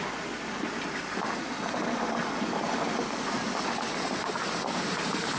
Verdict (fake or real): real